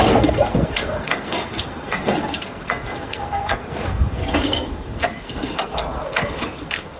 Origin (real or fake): fake